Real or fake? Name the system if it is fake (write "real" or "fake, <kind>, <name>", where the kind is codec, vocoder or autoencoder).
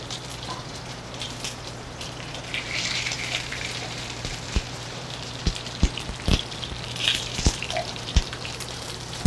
fake, vocoder, BigVGAN v2